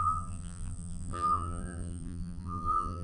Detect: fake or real fake